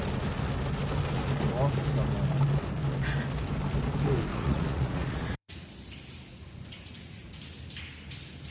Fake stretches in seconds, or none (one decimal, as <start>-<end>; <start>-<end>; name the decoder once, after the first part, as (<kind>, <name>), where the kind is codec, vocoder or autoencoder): 4.3-5.7 (vocoder, Vocos); 6.3-7.4